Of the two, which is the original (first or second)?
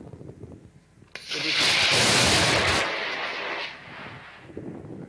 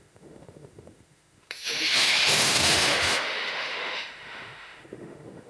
first